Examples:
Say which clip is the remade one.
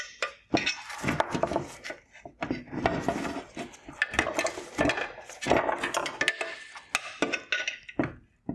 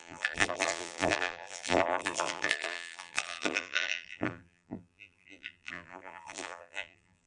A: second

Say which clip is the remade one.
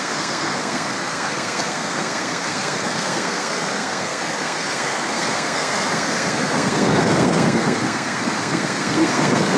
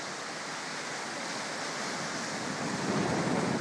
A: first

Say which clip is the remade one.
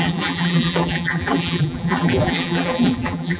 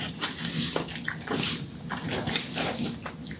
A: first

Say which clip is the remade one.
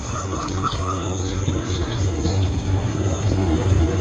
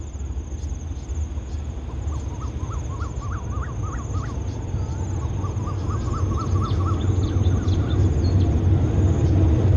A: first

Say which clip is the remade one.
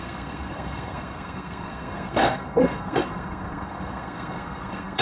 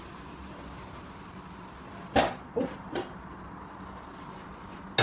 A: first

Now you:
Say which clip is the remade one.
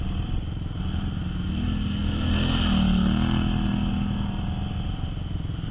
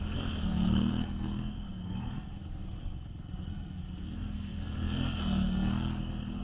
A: second